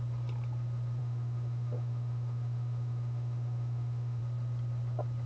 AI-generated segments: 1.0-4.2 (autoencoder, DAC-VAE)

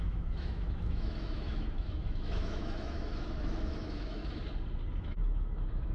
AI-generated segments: 0.0-4.2 (autoencoder, DAC-VAE); 5.0-5.9

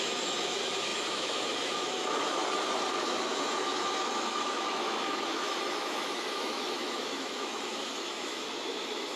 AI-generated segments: 0.0-2.4 (autoencoder, DAC-VAE); 3.0-9.2

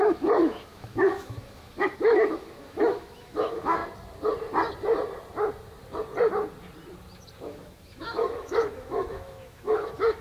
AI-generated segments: 0.0-3.8 (autoencoder, DAC-VAE); 7.4-10.2

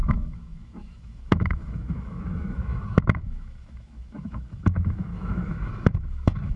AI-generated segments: 0.0-6.6 (autoencoder, DAC-VAE)

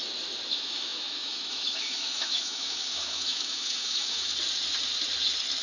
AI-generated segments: 0.5-4.3 (autoencoder, DAC-VAE)